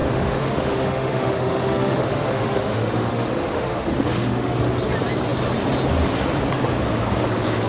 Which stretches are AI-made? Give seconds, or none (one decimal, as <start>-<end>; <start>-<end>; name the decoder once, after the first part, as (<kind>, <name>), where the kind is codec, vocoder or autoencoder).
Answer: 0.0-4.6 (autoencoder, DAC-VAE)